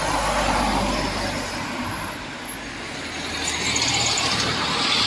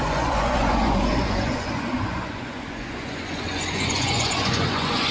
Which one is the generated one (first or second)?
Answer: second